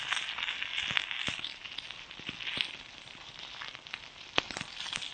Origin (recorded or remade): recorded